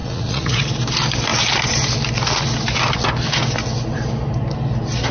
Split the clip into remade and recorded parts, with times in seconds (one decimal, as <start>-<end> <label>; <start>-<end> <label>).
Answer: 0.0-0.6 remade; 0.6-5.1 recorded